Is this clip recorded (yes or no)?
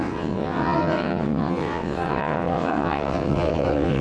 no